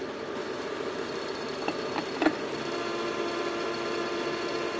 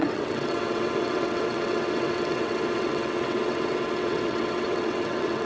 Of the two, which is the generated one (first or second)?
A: second